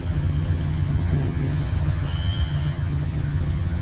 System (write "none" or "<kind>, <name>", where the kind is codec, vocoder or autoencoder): vocoder, HiFi-GAN